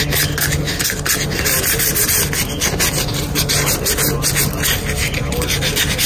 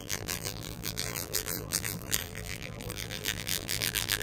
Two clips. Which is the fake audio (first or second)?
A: second